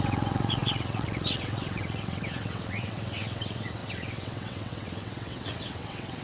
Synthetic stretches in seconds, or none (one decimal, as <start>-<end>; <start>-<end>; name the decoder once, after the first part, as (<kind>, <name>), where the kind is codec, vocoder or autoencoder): 0.0-6.2 (vocoder, WaveNeXt)